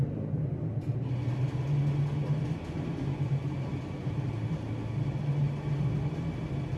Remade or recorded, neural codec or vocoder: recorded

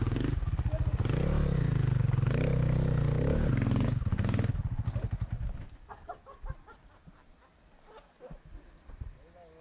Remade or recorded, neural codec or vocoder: recorded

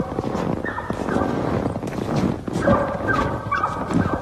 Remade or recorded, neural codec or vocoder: recorded